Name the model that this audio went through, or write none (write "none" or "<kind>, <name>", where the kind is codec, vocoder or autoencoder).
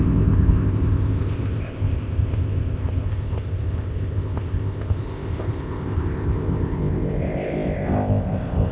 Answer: codec, ZipCodec